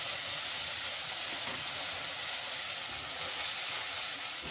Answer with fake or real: fake